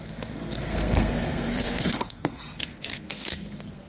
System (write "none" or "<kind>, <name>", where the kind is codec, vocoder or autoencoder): codec, SNAC